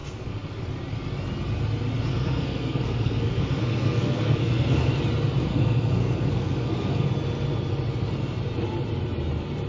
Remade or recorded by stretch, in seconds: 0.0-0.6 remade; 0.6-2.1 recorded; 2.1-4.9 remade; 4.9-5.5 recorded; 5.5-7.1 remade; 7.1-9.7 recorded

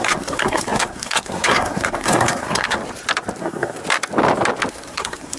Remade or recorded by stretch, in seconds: 0.0-2.8 remade; 2.8-3.4 recorded; 3.4-3.8 remade; 3.8-4.7 recorded; 4.7-5.4 remade

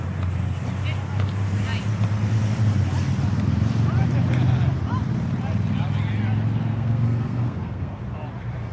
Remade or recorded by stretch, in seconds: 0.0-6.7 recorded; 6.7-8.0 remade; 8.0-8.7 recorded

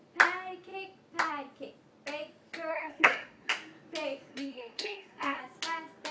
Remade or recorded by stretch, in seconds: 0.0-2.7 recorded; 2.7-3.5 remade; 3.5-4.3 recorded; 4.3-5.4 remade; 5.4-6.1 recorded

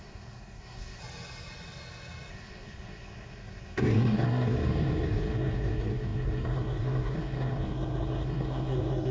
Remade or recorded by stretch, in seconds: 0.0-1.0 remade; 1.0-2.3 recorded; 2.3-9.1 remade

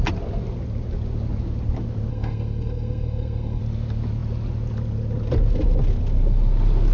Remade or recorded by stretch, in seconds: 0.0-2.1 recorded; 2.1-3.6 remade; 3.6-6.9 recorded

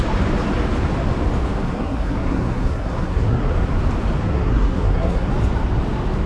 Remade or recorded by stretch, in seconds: 0.0-1.7 recorded; 1.7-3.5 remade; 3.5-4.2 recorded; 4.2-5.3 remade; 5.3-6.3 recorded

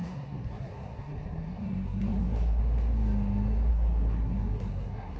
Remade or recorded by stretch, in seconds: 0.0-2.6 remade; 2.6-3.7 recorded; 3.7-5.2 remade